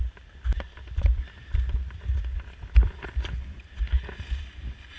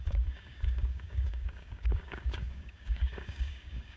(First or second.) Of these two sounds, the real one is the first